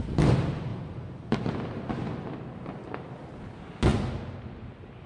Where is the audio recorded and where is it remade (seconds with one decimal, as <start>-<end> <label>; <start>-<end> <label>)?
0.0-5.1 recorded